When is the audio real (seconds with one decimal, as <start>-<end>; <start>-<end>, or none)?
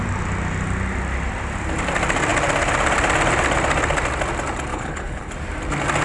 0.0-4.7; 5.3-6.0